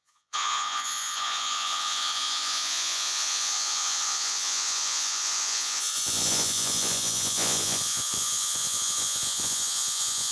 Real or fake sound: fake